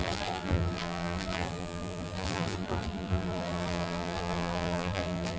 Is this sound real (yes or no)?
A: no